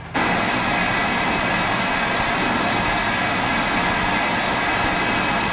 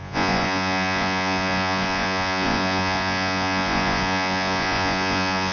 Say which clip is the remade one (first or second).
second